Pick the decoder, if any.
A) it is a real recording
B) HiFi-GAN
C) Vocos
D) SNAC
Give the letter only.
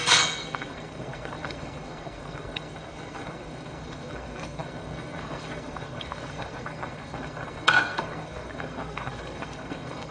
D